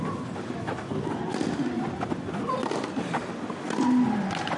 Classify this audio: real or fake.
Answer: real